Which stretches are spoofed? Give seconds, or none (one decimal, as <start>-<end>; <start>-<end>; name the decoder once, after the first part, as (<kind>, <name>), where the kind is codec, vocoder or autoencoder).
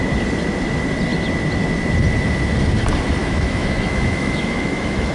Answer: 3.2-5.1 (autoencoder, DAC-VAE)